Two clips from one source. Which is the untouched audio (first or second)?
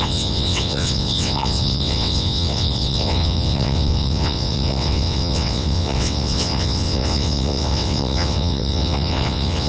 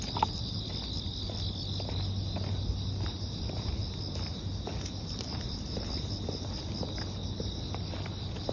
second